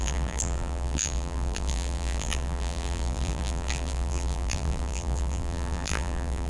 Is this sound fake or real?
fake